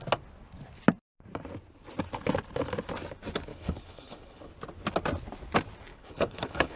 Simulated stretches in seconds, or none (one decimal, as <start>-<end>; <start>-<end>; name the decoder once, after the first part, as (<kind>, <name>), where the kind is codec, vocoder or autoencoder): 3.5-4.5 (codec, HILCodec); 5.9-6.8